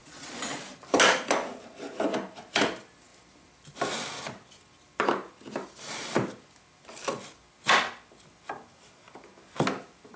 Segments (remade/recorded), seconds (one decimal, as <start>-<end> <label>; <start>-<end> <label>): 0.0-0.6 remade; 0.6-10.2 recorded

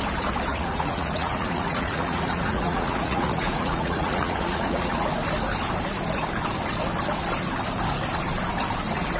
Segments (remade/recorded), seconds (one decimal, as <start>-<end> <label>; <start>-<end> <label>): 0.0-0.5 recorded; 0.5-5.1 remade; 5.1-9.2 recorded